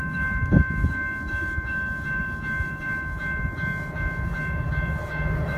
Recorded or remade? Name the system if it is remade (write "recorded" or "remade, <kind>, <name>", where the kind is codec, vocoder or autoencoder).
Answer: remade, autoencoder, DAC-VAE